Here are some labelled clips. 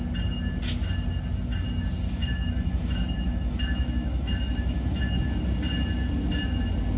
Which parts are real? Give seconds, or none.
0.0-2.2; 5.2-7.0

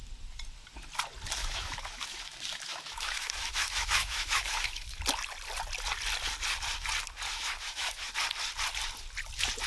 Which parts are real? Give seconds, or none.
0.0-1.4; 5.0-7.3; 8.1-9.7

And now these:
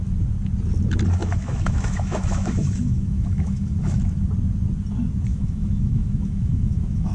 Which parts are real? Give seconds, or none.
0.0-1.2; 4.0-5.3

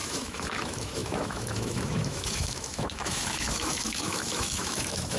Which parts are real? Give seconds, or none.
none

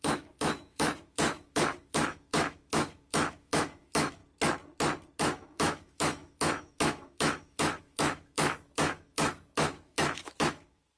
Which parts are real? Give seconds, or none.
4.2-5.2

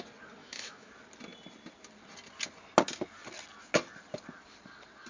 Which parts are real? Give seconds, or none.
0.0-0.4; 0.9-5.1

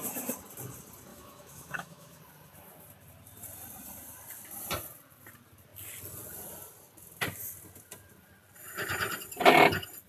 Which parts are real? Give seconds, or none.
0.0-1.1; 2.2-10.1